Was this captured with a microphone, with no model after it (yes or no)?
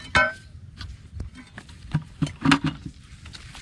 yes